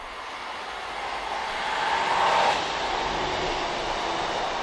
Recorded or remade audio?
recorded